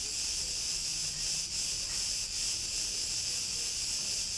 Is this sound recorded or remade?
recorded